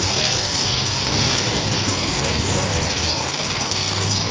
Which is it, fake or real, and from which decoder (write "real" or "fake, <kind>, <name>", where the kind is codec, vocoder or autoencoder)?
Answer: fake, codec, DAC